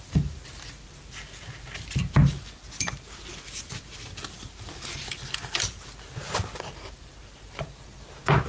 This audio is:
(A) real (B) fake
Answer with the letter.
A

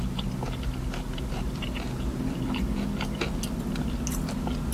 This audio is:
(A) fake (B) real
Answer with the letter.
B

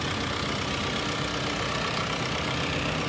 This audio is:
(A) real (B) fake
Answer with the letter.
A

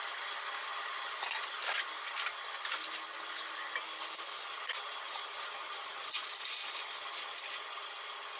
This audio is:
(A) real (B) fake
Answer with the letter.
A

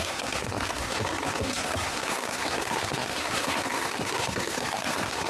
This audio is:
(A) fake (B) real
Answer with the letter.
A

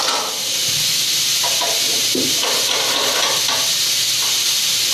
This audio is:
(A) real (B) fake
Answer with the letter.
A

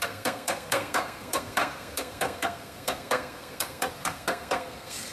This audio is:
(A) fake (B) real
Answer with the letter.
A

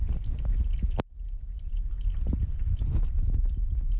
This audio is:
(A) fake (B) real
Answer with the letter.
B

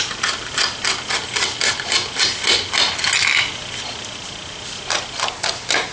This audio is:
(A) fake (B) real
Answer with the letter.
B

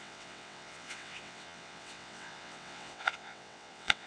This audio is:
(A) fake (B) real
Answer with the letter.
A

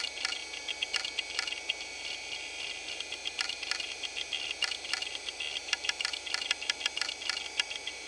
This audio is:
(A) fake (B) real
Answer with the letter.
B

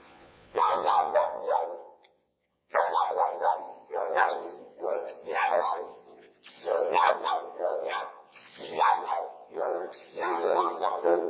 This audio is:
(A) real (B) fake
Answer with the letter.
B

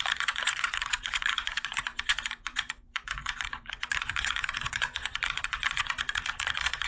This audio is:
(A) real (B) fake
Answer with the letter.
B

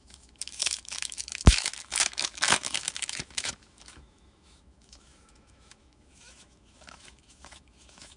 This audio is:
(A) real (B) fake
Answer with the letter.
B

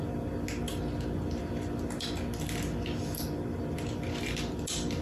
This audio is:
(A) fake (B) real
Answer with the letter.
B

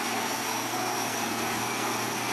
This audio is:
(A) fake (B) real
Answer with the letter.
A